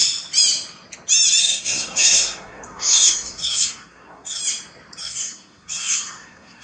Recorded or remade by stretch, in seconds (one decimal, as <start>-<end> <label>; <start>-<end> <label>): 0.0-1.4 recorded; 1.4-4.4 remade; 4.4-5.0 recorded; 5.0-6.6 remade